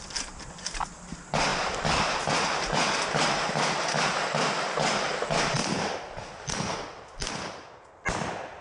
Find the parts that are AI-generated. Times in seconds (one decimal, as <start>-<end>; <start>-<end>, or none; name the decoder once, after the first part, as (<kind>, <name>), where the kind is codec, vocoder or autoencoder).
none